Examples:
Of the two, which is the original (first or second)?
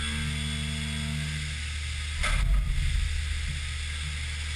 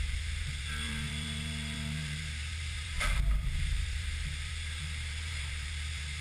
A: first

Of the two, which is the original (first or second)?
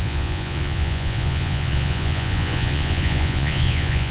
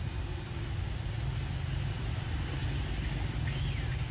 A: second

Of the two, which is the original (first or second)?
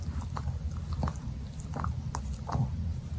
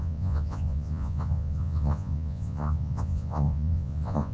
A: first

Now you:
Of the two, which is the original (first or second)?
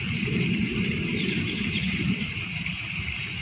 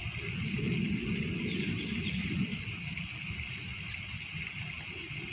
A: second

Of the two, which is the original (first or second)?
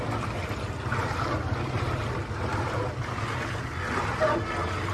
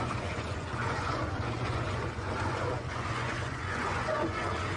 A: first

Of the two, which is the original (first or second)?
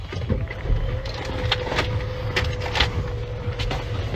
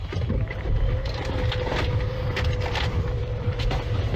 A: first